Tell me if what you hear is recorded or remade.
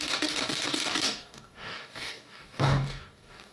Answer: remade